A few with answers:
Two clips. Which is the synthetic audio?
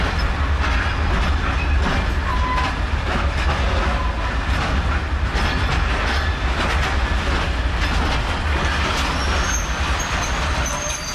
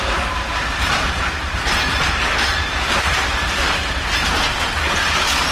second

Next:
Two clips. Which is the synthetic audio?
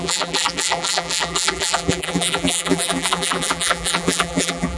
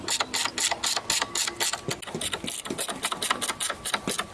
first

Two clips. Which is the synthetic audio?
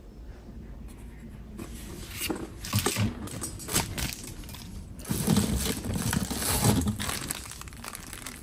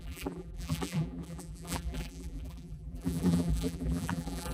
second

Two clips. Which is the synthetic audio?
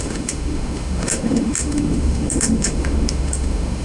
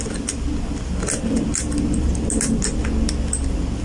first